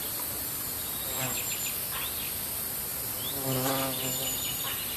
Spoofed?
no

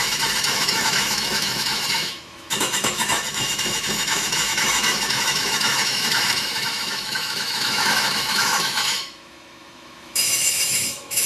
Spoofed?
yes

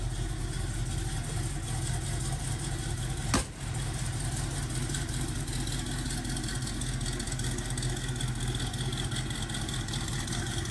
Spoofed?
no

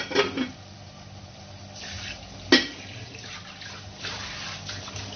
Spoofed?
no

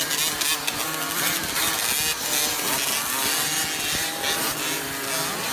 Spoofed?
no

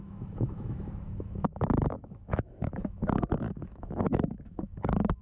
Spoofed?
yes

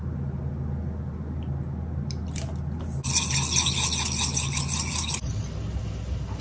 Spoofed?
no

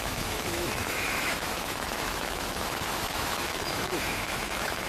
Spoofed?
yes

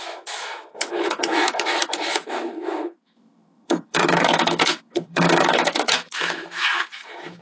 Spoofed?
yes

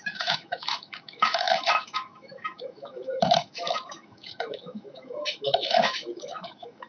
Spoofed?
yes